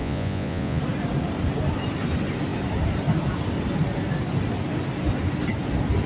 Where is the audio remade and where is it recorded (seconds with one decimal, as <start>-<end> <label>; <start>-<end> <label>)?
0.0-0.8 remade; 0.8-6.1 recorded